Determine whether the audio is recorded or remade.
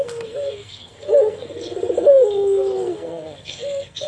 remade